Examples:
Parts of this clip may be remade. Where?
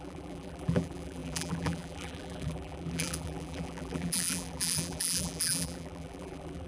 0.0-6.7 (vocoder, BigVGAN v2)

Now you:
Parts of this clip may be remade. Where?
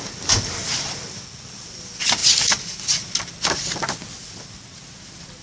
none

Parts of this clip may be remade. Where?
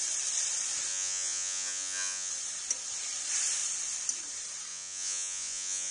0.9-2.3 (vocoder, Vocos); 4.7-5.9